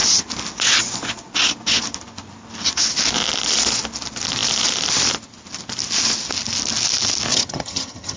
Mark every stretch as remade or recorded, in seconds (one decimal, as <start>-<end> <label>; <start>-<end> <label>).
0.0-7.3 recorded; 7.3-8.2 remade